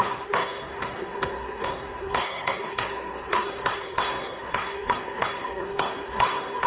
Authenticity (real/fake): fake